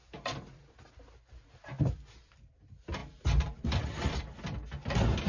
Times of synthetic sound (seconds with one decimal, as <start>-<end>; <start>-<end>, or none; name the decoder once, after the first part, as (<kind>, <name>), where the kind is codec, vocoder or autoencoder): 0.0-0.9 (vocoder, BigVGAN v2); 1.7-2.5; 3.0-4.2